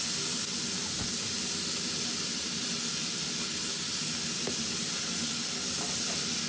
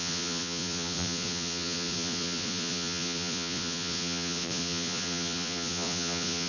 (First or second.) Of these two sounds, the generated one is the second